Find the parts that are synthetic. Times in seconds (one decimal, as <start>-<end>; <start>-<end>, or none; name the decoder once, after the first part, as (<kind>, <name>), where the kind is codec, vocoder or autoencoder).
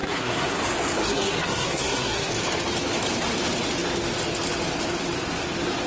0.0-0.6 (codec, SNAC); 1.0-2.3